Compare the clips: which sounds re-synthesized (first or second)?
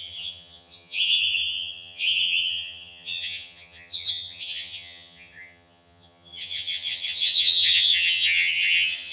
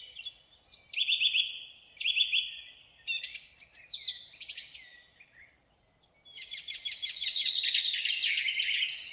first